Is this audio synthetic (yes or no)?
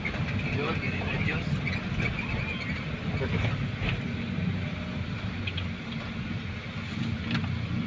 no